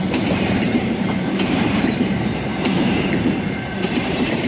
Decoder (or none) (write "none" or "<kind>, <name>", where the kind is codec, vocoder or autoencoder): vocoder, BigVGAN v2